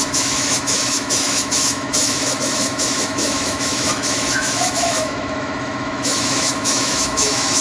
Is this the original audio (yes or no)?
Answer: no